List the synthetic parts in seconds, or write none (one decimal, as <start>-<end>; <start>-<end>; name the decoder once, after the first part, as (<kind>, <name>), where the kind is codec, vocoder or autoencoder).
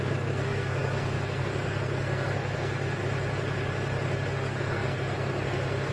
0.0-3.0 (codec, SNAC); 4.3-5.9